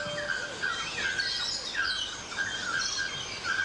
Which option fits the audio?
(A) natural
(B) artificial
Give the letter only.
A